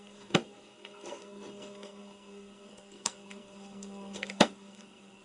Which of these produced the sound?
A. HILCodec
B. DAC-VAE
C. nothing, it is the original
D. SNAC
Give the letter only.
D